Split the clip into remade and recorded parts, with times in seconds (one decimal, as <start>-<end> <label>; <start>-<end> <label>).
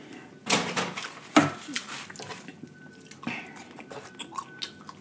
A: 0.0-5.0 recorded